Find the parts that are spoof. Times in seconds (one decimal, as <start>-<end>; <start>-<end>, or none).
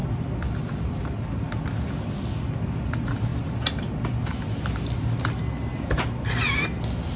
0.0-0.9